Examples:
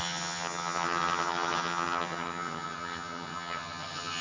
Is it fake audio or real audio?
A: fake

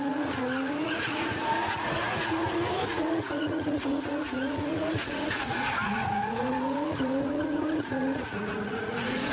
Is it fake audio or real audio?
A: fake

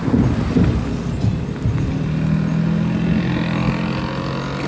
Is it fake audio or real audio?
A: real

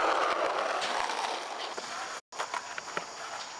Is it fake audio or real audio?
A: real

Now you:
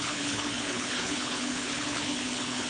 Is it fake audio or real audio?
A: fake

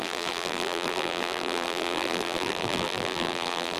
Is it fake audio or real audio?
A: fake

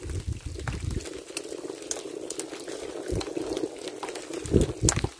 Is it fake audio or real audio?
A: real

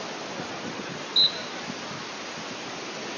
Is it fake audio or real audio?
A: real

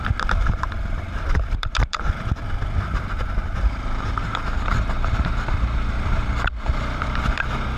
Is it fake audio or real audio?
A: fake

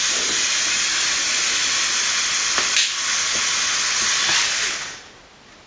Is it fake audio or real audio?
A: real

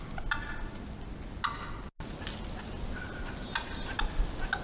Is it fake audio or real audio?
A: real